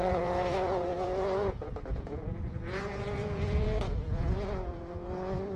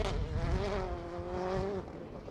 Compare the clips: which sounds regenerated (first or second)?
first